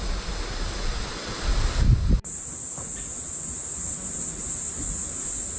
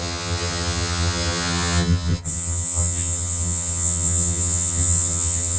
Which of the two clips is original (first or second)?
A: first